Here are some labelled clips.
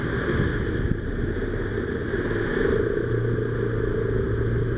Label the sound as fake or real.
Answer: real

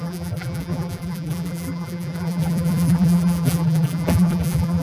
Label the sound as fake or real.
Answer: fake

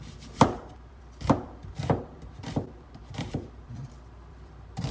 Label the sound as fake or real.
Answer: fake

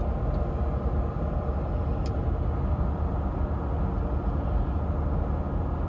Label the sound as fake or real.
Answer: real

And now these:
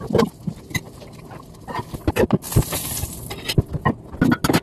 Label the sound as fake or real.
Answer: real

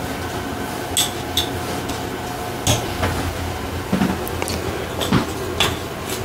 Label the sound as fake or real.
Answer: real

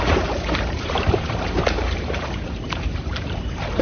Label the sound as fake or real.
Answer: fake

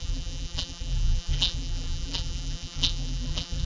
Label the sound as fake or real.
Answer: fake